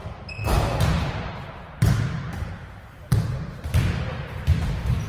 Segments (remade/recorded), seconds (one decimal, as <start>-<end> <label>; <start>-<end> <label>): 0.0-2.5 remade; 2.5-3.1 recorded; 3.1-4.0 remade; 4.0-4.5 recorded; 4.5-5.1 remade